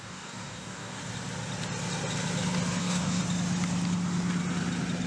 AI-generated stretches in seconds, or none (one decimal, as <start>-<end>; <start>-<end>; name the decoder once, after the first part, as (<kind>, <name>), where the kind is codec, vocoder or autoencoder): 0.0-1.0 (codec, DAC); 2.8-3.2